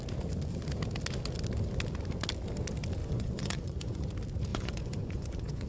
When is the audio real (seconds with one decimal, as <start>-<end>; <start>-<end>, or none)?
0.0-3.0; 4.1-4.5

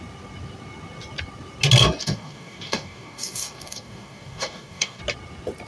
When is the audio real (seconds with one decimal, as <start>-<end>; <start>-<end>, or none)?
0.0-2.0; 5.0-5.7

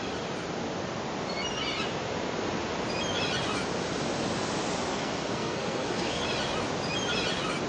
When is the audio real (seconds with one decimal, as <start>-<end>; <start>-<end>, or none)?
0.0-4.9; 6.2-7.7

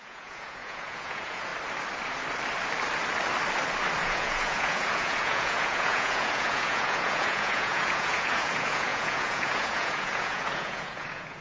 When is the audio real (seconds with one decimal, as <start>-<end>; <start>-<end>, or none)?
1.5-4.0

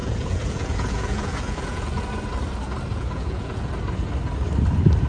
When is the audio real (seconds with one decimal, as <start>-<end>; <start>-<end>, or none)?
2.0-2.9; 3.7-5.1

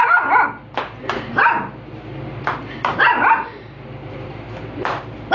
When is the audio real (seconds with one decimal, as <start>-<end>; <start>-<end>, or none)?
1.4-2.3